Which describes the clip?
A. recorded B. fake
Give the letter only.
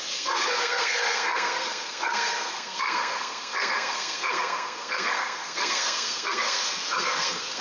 B